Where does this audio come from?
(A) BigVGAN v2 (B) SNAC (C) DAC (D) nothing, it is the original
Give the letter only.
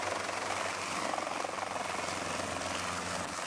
D